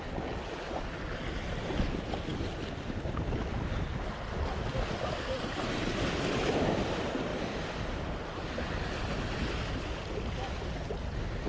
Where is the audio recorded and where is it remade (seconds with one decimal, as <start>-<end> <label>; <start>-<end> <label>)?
0.0-11.5 recorded